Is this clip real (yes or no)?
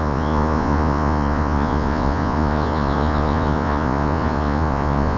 no